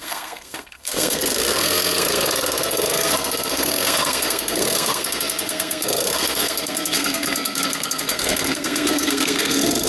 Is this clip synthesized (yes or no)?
yes